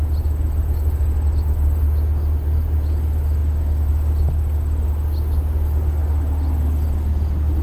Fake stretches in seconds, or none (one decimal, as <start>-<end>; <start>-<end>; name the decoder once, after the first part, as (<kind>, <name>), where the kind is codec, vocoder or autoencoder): none